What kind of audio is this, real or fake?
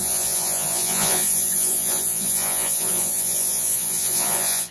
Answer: fake